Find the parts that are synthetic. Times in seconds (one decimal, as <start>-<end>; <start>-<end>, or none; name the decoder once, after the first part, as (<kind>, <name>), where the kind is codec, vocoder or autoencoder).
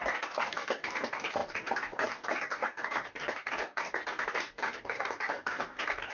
0.0-6.1 (codec, DAC)